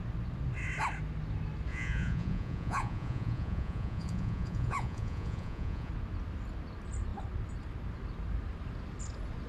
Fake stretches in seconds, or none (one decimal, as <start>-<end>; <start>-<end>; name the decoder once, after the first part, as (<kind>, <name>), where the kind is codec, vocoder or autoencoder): 1.7-5.9 (vocoder, Vocos)